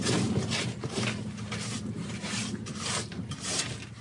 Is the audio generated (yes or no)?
no